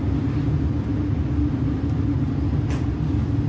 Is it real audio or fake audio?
real